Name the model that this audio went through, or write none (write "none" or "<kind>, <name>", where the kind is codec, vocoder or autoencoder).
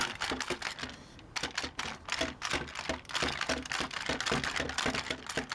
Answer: none